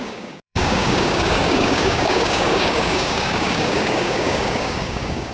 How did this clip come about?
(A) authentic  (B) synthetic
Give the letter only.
B